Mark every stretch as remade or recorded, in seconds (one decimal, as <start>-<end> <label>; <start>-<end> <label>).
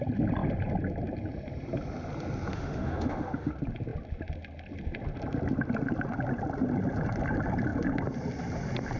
0.0-2.5 recorded; 2.5-3.5 remade; 3.5-9.0 recorded